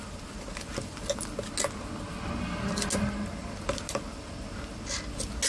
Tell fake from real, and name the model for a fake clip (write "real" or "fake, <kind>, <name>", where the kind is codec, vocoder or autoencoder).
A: real